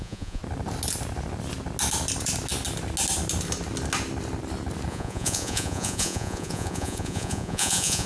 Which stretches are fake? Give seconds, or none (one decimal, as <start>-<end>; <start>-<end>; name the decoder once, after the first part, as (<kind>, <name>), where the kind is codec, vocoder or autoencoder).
0.0-0.4 (vocoder, Vocos); 4.9-8.1